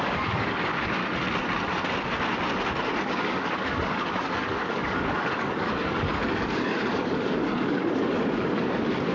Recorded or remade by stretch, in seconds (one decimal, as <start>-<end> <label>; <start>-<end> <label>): 0.0-1.0 remade; 1.0-3.0 recorded; 3.0-9.1 remade